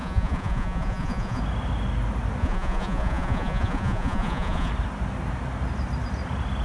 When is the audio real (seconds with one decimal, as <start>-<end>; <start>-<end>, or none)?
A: 1.4-2.4; 4.7-6.6